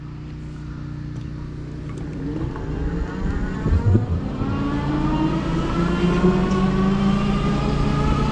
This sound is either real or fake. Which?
real